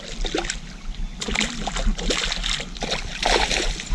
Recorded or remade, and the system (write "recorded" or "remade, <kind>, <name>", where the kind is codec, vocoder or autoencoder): recorded